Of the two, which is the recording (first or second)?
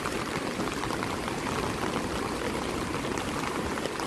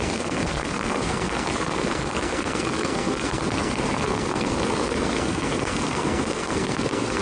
first